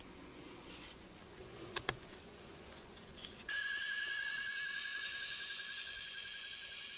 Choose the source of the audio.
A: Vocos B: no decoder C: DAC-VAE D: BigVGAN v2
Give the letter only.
A